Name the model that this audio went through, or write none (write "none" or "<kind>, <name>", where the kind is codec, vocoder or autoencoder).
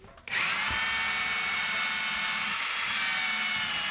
none